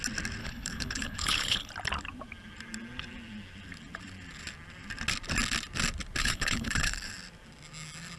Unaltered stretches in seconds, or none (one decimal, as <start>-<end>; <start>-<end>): 0.0-0.4; 1.7-6.2; 7.1-8.2